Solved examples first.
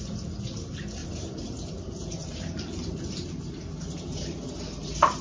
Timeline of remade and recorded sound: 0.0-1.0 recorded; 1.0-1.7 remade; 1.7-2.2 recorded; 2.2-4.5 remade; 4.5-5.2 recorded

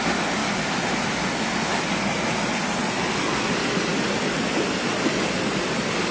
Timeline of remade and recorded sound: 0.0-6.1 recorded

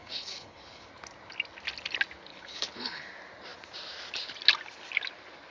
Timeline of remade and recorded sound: 0.0-0.9 remade; 0.9-2.3 recorded; 2.3-3.1 remade; 3.1-5.5 recorded

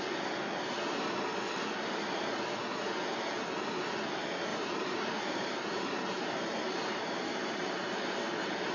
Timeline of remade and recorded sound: 0.0-4.5 recorded; 4.5-7.9 remade; 7.9-8.7 recorded